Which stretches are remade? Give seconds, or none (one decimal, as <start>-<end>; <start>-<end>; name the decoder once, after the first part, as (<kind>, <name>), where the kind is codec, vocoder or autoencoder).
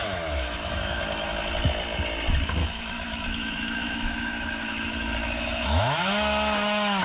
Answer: 0.0-1.0 (autoencoder, DAC-VAE); 2.6-7.0